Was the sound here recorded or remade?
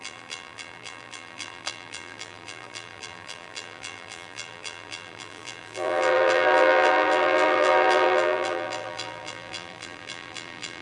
remade